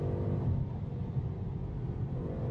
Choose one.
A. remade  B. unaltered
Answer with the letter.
B